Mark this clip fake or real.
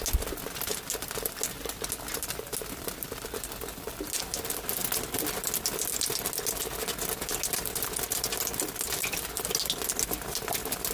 real